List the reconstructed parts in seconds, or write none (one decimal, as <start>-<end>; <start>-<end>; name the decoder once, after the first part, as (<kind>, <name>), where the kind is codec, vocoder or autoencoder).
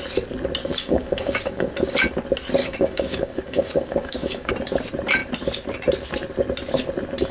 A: 0.6-1.7 (codec, DAC); 2.6-4.5